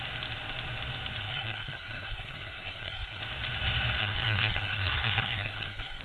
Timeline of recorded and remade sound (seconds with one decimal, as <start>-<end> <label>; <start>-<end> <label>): 0.0-1.2 recorded; 1.2-3.2 remade; 3.2-4.0 recorded; 4.0-6.0 remade